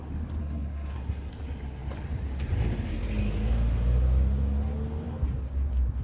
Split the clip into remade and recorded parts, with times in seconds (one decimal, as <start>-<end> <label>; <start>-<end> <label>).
0.0-0.4 recorded; 0.4-1.3 remade; 1.3-6.0 recorded